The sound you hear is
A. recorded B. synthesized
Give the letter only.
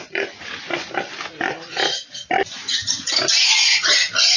A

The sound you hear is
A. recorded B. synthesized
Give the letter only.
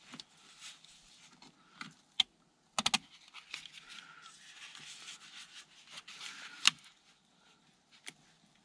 A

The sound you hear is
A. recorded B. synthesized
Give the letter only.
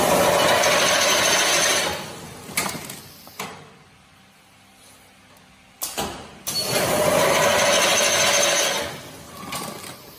A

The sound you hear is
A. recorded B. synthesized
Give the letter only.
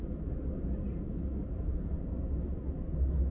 A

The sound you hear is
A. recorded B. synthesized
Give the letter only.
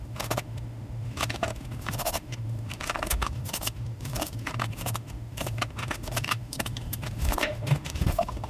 B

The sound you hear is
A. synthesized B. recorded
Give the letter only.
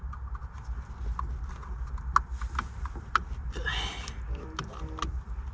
B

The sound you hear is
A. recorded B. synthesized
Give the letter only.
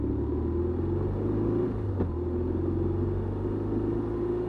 A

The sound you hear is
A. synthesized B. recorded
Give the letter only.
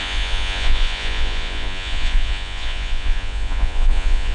A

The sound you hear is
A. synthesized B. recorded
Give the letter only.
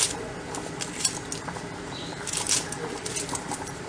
A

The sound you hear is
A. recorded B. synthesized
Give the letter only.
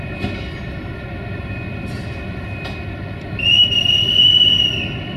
A